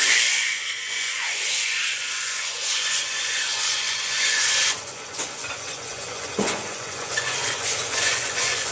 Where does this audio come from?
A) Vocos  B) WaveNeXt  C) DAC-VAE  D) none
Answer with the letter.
A